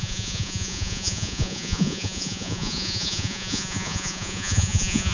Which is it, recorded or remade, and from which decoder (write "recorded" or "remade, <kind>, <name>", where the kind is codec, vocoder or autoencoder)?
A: remade, vocoder, Vocos